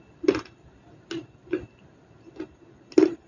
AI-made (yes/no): no